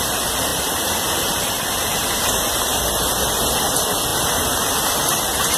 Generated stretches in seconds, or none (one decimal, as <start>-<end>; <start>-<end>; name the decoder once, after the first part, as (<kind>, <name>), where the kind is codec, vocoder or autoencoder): 0.5-2.8 (vocoder, BigVGAN v2); 4.1-4.7